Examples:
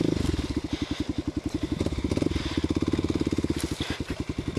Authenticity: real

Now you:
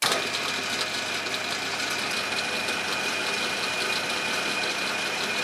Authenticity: real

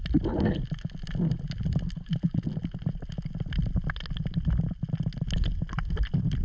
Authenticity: real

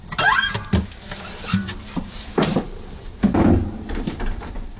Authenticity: fake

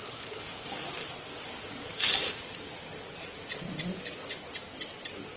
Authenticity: real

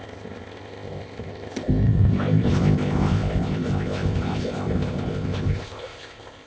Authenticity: fake